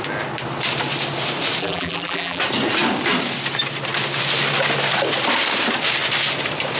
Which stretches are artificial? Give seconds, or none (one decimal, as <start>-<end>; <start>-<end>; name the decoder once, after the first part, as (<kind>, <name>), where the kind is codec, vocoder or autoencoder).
1.6-2.4 (vocoder, BigVGAN v2)